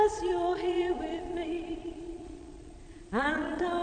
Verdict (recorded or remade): remade